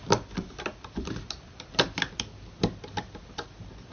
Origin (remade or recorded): recorded